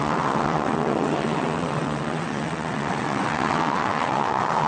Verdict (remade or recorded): remade